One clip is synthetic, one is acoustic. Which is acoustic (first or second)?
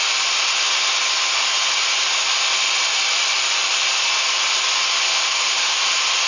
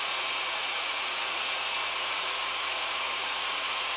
first